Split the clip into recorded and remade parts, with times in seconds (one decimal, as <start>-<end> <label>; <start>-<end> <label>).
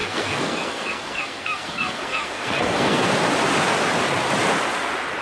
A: 0.0-3.1 remade; 3.1-5.2 recorded